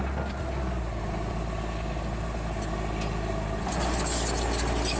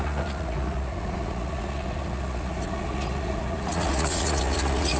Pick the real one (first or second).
first